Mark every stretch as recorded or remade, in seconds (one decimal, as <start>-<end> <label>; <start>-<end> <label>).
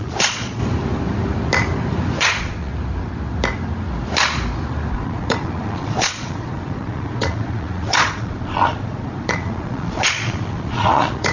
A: 0.0-0.6 remade; 0.6-2.2 recorded; 2.2-2.7 remade; 2.7-4.9 recorded; 4.9-11.3 remade